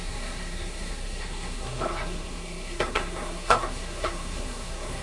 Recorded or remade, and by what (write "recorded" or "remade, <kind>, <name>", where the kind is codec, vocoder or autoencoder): remade, codec, SNAC